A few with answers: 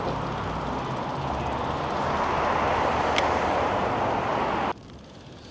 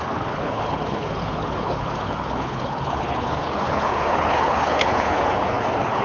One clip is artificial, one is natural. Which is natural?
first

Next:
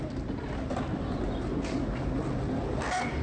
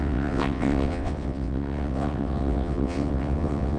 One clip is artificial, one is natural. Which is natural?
first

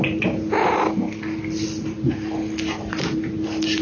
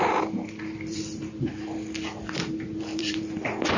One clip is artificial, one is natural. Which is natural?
first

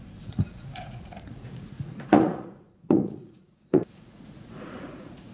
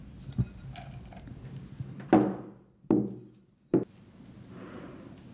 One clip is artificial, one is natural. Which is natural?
second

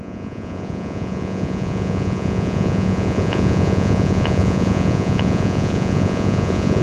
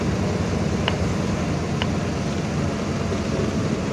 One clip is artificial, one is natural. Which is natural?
second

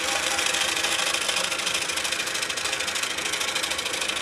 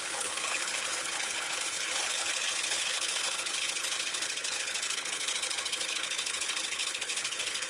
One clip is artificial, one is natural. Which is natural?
first